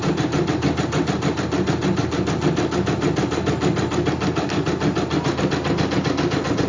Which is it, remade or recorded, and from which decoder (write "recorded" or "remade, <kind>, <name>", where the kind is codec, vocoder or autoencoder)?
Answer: recorded